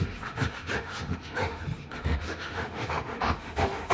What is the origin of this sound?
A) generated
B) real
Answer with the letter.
A